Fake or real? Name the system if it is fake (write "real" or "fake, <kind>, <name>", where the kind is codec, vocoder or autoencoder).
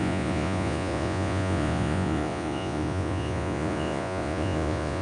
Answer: fake, vocoder, Vocos